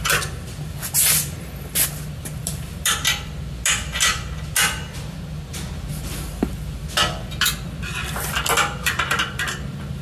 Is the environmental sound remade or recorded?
recorded